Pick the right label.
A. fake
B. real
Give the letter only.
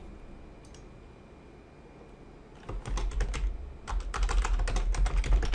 B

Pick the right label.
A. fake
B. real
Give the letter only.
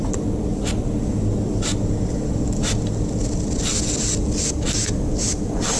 B